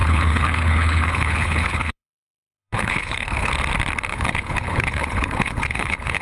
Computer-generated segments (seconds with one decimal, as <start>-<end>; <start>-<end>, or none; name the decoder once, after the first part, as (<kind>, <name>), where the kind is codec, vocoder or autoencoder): 0.0-3.5 (codec, HILCodec); 4.1-6.2